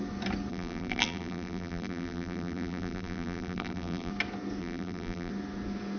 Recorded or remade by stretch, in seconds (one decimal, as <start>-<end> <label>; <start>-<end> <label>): 0.0-0.5 recorded; 0.5-4.1 remade; 4.1-4.6 recorded; 4.6-5.3 remade; 5.3-6.0 recorded